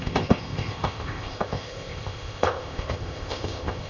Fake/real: fake